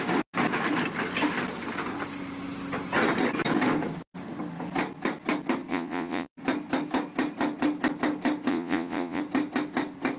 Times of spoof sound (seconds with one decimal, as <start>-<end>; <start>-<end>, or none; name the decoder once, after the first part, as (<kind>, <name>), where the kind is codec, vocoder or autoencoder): 5.7-6.3 (vocoder, Vocos); 8.5-9.2